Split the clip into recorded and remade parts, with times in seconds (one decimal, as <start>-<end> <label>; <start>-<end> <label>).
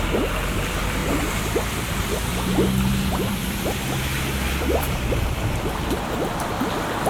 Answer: 0.0-1.0 recorded; 1.0-2.1 remade; 2.1-2.9 recorded; 2.9-6.0 remade; 6.0-7.1 recorded